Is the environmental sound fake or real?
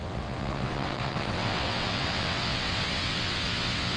fake